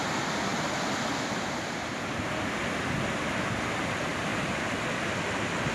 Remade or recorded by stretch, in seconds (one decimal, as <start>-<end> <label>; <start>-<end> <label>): 0.0-5.7 recorded